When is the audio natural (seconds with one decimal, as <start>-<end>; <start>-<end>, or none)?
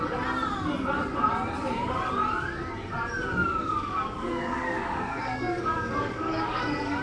0.0-3.4